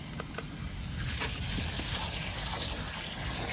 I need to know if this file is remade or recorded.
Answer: recorded